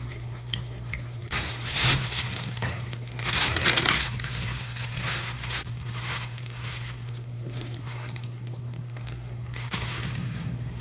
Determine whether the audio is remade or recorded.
remade